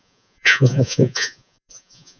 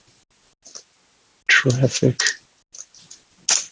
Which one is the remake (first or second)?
first